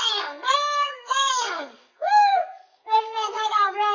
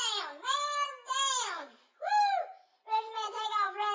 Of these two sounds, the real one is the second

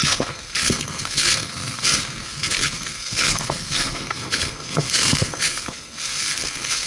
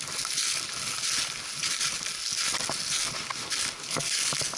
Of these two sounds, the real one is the second